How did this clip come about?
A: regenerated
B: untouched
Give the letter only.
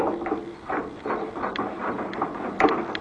B